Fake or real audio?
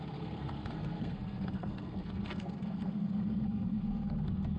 fake